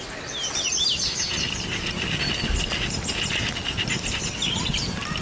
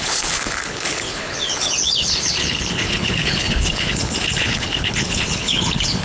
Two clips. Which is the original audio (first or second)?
first